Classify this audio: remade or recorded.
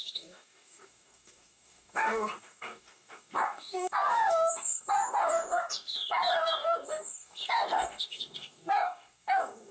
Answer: remade